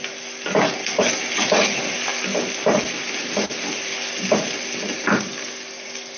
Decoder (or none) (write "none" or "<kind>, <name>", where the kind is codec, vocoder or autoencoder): none